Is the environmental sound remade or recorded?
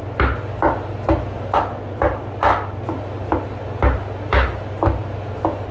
recorded